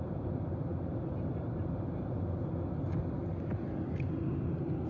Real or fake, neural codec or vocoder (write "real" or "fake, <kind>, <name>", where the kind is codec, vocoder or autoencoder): real